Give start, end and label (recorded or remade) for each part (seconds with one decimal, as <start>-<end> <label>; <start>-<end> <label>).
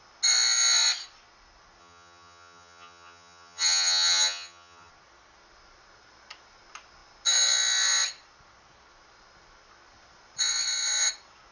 0.0-1.8 recorded; 1.8-4.9 remade; 4.9-11.5 recorded